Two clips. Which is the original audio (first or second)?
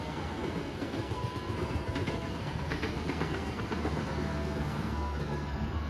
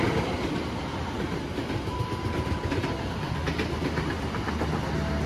second